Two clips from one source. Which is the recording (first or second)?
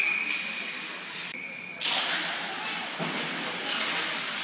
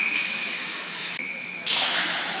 first